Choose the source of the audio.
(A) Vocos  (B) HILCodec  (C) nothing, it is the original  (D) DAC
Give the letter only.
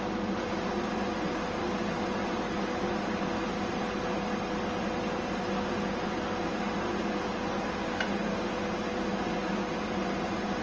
C